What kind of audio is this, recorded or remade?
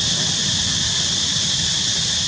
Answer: recorded